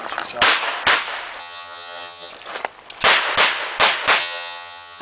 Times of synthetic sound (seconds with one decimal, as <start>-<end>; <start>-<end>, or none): 1.4-2.3; 4.2-5.0